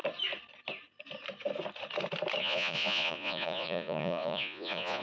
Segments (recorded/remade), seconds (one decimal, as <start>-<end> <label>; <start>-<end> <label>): 0.0-2.4 recorded; 2.4-5.0 remade

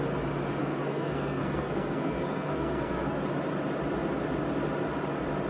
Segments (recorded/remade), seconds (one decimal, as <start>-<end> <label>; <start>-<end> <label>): 0.0-0.6 recorded; 0.6-3.2 remade; 3.2-5.5 recorded

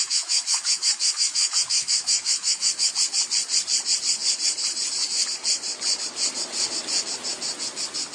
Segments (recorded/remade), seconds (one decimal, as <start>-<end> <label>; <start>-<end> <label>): 0.0-2.9 remade; 2.9-8.1 recorded

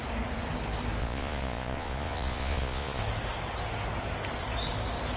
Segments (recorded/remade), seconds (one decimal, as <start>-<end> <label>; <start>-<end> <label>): 0.0-1.0 recorded; 1.0-3.0 remade; 3.0-5.2 recorded

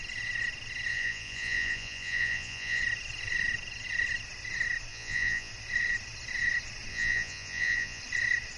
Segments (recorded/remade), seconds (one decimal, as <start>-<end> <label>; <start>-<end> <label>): 0.0-0.9 recorded; 0.9-2.8 remade; 2.8-4.9 recorded; 4.9-5.5 remade; 5.5-6.9 recorded; 6.9-8.0 remade; 8.0-8.6 recorded

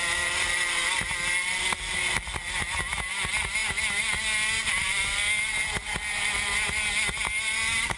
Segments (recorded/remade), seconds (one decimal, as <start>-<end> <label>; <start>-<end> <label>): 0.0-8.0 recorded